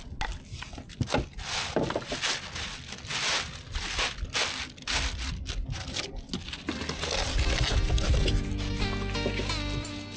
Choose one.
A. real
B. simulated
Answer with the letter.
A